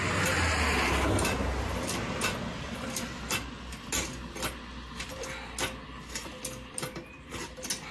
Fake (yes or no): no